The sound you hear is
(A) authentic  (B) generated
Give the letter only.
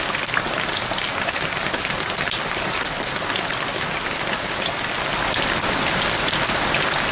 A